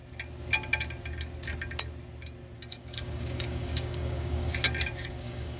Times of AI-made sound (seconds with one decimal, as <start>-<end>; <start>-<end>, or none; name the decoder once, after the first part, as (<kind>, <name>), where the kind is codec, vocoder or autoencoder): 2.7-4.5 (codec, DAC); 5.1-5.6

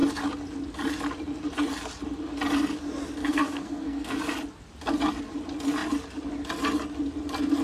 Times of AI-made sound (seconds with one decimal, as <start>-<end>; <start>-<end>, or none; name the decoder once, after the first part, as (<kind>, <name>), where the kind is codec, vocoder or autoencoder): 3.2-4.2 (codec, SNAC)

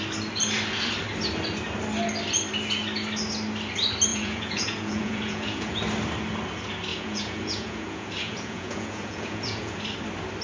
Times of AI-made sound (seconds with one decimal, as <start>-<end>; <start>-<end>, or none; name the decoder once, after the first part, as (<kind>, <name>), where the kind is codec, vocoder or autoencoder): 4.1-5.8 (vocoder, Vocos); 6.9-9.8

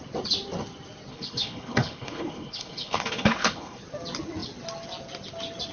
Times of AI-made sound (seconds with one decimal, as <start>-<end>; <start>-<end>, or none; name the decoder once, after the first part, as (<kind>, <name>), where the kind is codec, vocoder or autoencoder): 1.1-3.8 (codec, HILCodec)

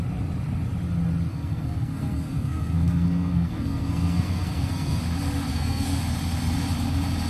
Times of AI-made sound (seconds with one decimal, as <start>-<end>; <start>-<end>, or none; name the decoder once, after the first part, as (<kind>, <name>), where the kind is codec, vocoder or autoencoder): 1.3-5.0 (codec, SNAC); 5.5-6.0